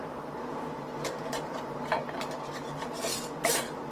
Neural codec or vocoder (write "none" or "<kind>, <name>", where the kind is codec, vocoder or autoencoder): vocoder, BigVGAN v2